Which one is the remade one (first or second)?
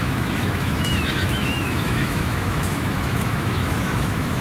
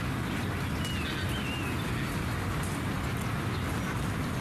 first